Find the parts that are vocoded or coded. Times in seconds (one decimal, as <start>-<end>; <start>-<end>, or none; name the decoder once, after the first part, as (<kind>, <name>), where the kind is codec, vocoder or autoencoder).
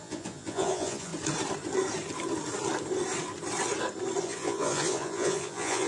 0.0-1.1 (vocoder, Vocos); 4.2-5.9